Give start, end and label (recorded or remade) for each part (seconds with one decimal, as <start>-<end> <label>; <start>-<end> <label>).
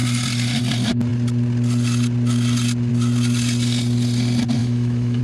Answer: 0.0-4.6 recorded; 4.6-5.2 remade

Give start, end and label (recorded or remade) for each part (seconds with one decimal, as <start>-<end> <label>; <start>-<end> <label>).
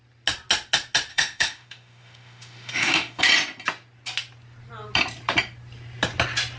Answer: 0.0-1.1 recorded; 1.1-3.2 remade; 3.2-6.6 recorded